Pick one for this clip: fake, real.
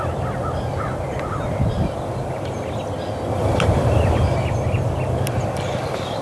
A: fake